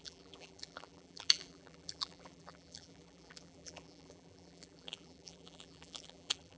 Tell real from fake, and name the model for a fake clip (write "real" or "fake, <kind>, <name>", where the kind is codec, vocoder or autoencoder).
fake, vocoder, BigVGAN v2